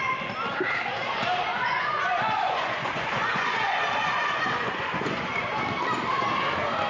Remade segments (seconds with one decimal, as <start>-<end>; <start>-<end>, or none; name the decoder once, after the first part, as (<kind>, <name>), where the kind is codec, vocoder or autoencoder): 1.5-5.6 (vocoder, Vocos)

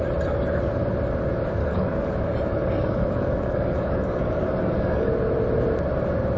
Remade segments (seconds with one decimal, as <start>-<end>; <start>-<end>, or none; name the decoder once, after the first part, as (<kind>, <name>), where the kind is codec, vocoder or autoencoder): 1.6-5.1 (codec, DAC)

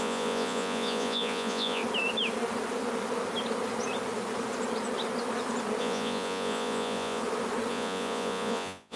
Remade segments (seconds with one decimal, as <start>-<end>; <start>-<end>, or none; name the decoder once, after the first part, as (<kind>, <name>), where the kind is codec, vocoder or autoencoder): 0.0-1.8 (vocoder, Vocos); 5.8-7.2; 7.7-9.0

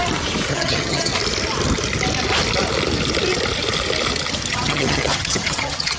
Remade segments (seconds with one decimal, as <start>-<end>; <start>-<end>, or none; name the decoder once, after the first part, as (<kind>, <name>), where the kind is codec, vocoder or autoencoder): 0.5-1.1 (vocoder, HiFi-GAN); 4.5-6.0

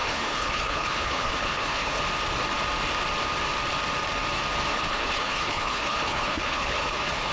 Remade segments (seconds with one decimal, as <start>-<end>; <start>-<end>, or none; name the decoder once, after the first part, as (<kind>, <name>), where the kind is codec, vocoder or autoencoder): 0.0-2.0 (codec, HILCodec); 4.7-7.3

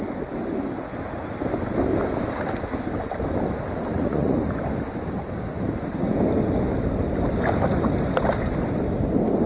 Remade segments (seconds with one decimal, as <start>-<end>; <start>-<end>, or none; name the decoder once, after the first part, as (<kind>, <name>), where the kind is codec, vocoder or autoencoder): 3.9-4.4 (vocoder, Vocos)